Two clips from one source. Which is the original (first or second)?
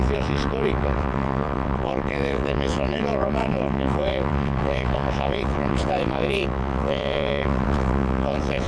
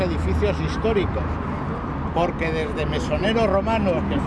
second